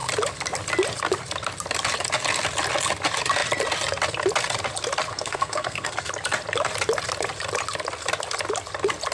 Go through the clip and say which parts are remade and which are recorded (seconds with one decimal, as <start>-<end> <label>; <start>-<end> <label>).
0.0-5.1 recorded; 5.1-6.1 remade; 6.1-9.1 recorded